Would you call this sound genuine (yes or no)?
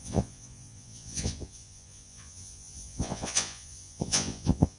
no